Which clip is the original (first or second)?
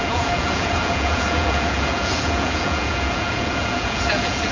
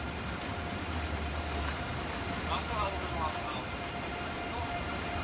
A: second